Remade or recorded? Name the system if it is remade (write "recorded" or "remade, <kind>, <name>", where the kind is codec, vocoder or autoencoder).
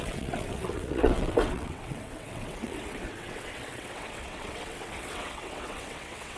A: remade, vocoder, WaveNeXt